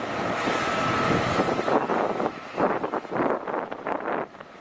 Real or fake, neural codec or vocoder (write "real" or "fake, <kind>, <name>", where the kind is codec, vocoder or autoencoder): real